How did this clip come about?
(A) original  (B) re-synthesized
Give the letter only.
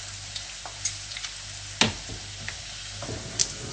A